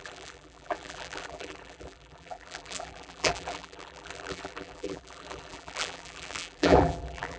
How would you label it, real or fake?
fake